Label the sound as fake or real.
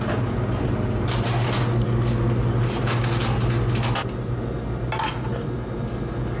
real